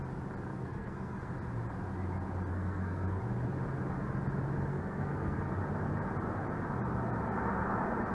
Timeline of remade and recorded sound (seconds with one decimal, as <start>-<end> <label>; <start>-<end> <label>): 0.0-0.5 recorded; 0.5-1.3 remade; 1.3-2.5 recorded; 2.5-3.2 remade; 3.2-4.7 recorded; 4.7-5.4 remade; 5.4-8.1 recorded